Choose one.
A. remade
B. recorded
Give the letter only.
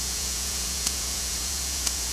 A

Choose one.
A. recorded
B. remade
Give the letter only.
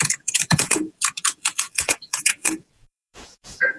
B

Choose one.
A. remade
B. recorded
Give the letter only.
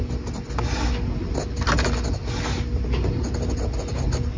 B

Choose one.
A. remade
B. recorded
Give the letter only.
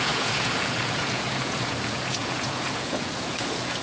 A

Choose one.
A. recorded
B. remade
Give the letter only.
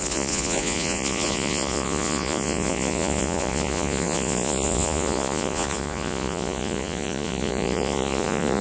B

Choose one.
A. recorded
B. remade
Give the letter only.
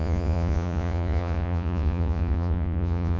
B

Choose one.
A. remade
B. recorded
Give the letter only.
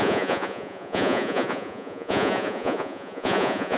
A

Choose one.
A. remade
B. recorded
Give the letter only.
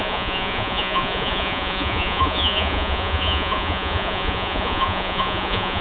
A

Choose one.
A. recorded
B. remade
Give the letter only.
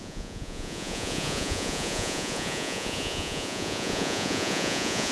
B